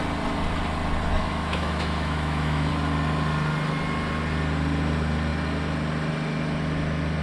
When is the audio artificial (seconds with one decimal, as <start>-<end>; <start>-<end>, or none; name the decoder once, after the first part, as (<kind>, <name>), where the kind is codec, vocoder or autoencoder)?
1.2-2.7 (autoencoder, DAC-VAE)